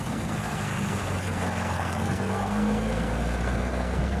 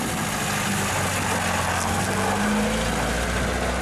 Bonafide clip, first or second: second